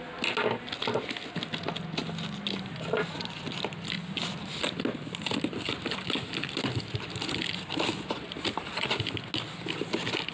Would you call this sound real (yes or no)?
yes